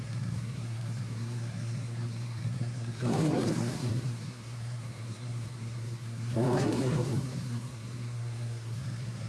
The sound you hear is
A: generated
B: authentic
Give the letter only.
A